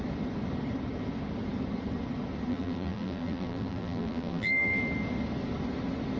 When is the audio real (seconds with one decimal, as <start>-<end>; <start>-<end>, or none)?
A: 0.0-2.5; 4.8-6.2